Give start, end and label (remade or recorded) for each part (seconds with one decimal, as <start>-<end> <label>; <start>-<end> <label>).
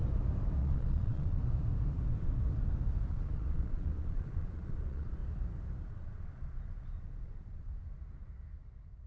0.0-0.6 recorded; 0.6-1.4 remade; 1.4-3.1 recorded; 3.1-5.2 remade; 5.2-5.8 recorded; 5.8-7.7 remade; 7.7-9.1 recorded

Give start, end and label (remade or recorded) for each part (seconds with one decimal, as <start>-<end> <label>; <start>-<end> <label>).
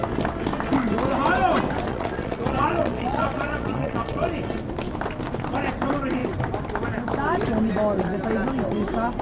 0.0-1.9 recorded; 1.9-4.3 remade; 4.3-9.2 recorded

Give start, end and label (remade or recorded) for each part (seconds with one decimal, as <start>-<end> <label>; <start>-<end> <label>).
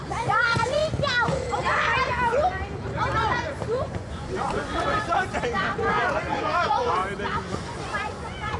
0.0-0.8 remade; 0.8-3.2 recorded; 3.2-7.0 remade; 7.0-7.5 recorded; 7.5-8.6 remade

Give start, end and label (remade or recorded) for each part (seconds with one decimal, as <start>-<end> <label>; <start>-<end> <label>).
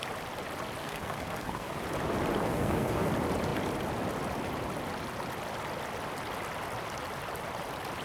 0.0-0.8 recorded; 0.8-1.8 remade; 1.8-2.4 recorded; 2.4-3.1 remade; 3.1-8.0 recorded